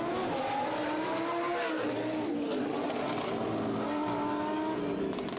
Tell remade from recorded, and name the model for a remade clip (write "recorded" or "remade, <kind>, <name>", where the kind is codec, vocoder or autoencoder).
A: recorded